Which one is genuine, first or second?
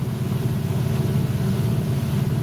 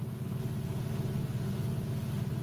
second